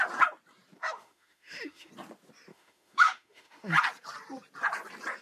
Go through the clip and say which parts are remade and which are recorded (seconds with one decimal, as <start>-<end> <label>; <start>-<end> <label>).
0.0-0.8 recorded; 0.8-1.9 remade; 1.9-2.5 recorded; 2.5-3.7 remade; 3.7-5.2 recorded

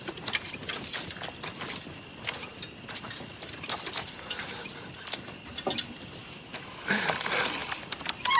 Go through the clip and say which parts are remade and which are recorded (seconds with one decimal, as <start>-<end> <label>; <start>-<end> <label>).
0.0-6.2 recorded; 6.2-6.8 remade; 6.8-8.4 recorded